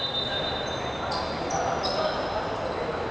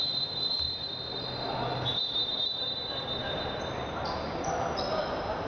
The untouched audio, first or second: first